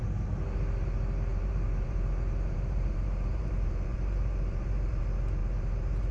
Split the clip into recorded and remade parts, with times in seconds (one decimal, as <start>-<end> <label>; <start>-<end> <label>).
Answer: 0.0-1.3 recorded; 1.3-5.0 remade; 5.0-5.4 recorded; 5.4-6.1 remade